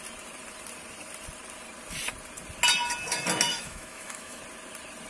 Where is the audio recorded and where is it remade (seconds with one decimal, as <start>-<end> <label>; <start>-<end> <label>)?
0.0-3.5 recorded; 3.5-4.4 remade; 4.4-5.1 recorded

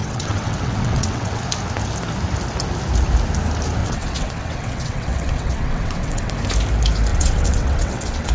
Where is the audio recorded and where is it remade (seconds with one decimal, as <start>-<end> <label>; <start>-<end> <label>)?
0.0-1.4 remade; 1.4-3.8 recorded; 3.8-6.3 remade; 6.3-7.1 recorded; 7.1-8.3 remade

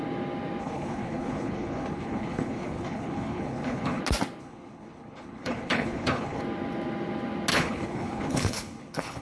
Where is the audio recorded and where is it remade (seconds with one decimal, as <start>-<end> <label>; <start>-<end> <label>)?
0.0-0.6 recorded; 0.6-4.0 remade; 4.0-4.4 recorded; 4.4-6.4 remade; 6.4-7.5 recorded; 7.5-9.2 remade

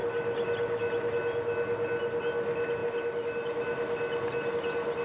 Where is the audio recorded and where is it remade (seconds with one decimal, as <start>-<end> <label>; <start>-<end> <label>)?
0.0-5.0 recorded

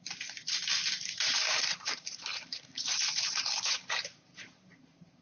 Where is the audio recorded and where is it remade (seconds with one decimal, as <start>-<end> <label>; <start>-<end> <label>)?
0.0-5.2 remade

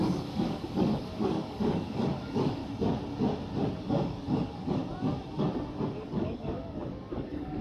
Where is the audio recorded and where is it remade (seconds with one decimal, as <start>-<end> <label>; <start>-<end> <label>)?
0.0-2.6 remade; 2.6-3.8 recorded; 3.8-4.8 remade; 4.8-5.9 recorded; 5.9-7.6 remade

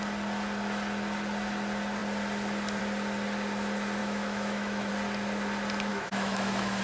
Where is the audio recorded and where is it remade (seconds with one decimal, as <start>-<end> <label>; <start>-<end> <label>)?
0.0-4.0 recorded; 4.0-4.9 remade; 4.9-5.9 recorded; 5.9-6.8 remade